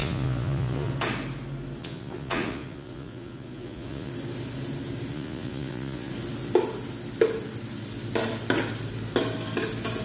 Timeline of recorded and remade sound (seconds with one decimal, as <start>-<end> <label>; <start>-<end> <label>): 0.0-0.9 remade; 0.9-1.8 recorded; 1.8-4.1 remade; 4.1-5.1 recorded; 5.1-6.1 remade; 6.1-10.0 recorded